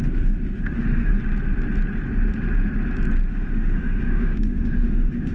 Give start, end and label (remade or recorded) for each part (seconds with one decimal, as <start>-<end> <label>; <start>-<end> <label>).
0.0-1.1 remade; 1.1-3.3 recorded; 3.3-5.3 remade